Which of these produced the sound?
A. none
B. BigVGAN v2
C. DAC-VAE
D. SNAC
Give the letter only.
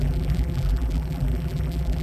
B